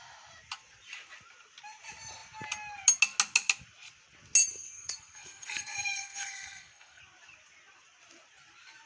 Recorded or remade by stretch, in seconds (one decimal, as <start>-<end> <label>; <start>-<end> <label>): 0.0-4.5 recorded; 4.5-7.0 remade; 7.0-8.9 recorded